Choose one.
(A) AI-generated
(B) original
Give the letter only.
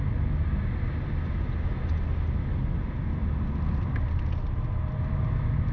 B